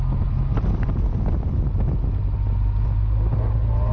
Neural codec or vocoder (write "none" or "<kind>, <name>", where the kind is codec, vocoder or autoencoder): none